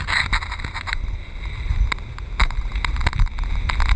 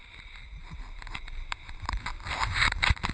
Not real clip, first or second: second